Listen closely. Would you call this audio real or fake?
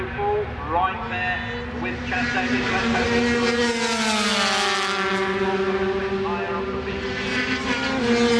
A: real